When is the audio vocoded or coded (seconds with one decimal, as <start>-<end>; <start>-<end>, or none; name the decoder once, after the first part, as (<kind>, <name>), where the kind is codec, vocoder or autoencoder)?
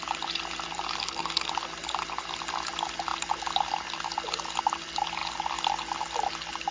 1.0-1.5 (codec, SNAC)